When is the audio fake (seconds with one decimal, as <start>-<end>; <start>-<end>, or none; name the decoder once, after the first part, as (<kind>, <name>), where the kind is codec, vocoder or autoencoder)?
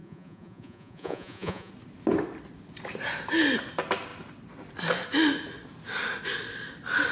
0.0-1.7 (vocoder, Vocos)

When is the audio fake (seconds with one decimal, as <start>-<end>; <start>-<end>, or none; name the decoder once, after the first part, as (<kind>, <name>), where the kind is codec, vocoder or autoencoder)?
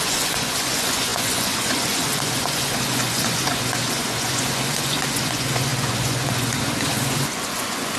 0.0-8.0 (vocoder, Vocos)